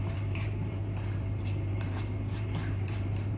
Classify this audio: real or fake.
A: fake